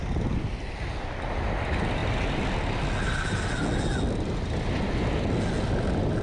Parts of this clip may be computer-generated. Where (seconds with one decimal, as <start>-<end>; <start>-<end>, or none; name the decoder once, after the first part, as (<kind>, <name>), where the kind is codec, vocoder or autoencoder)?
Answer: none